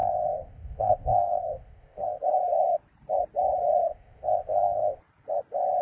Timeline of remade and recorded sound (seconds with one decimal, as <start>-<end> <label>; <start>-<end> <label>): 0.0-2.2 remade; 2.2-3.9 recorded; 3.9-5.0 remade; 5.0-5.8 recorded